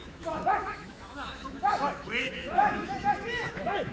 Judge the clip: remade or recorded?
remade